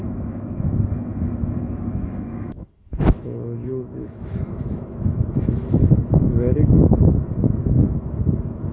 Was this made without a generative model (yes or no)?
no